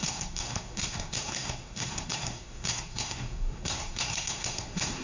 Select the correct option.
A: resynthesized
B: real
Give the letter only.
A